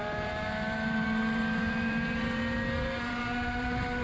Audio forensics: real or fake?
fake